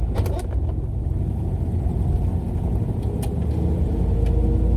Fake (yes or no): no